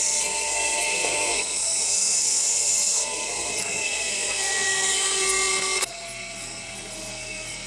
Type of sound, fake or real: fake